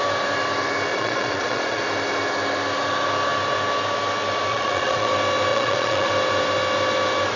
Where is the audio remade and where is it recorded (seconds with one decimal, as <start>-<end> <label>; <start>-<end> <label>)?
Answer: 0.0-0.9 recorded; 0.9-1.8 remade; 1.8-4.5 recorded; 4.5-5.1 remade; 5.1-5.5 recorded; 5.5-6.1 remade; 6.1-7.4 recorded